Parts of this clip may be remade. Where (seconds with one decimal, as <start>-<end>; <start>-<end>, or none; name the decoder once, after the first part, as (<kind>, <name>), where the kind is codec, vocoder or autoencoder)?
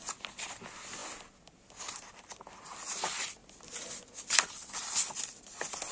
none